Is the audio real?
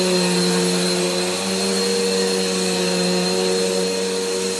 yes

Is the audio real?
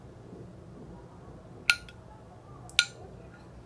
yes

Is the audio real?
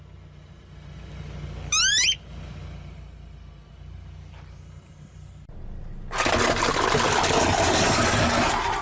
yes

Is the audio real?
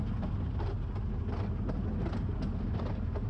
yes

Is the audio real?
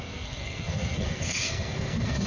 no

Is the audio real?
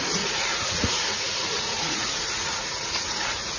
no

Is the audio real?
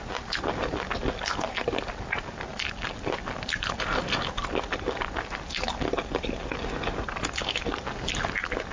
yes